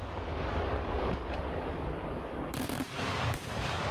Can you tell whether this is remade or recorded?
remade